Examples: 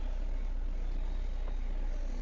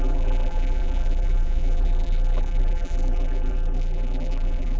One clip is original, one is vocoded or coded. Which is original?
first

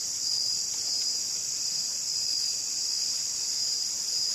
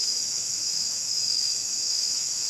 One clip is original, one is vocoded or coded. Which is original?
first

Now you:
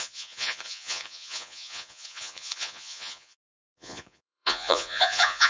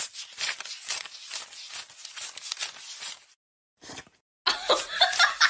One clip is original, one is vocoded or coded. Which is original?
second